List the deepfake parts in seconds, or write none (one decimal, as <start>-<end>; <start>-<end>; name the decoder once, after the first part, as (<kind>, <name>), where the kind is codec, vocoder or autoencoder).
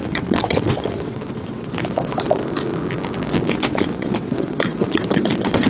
0.0-2.4 (vocoder, WaveNeXt); 3.5-5.7